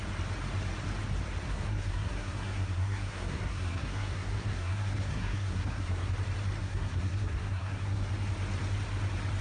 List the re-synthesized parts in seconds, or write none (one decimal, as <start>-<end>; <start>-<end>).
1.5-6.1; 6.6-8.1